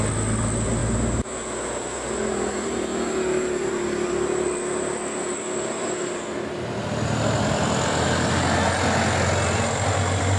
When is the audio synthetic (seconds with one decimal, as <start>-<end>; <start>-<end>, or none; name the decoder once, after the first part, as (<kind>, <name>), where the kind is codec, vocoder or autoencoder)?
none